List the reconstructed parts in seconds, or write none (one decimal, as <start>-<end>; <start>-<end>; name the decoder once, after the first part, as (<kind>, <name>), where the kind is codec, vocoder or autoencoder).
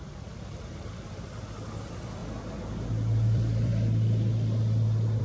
0.0-2.2 (vocoder, BigVGAN v2); 2.9-3.7